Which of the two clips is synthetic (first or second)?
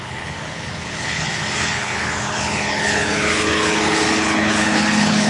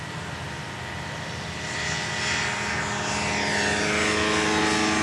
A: first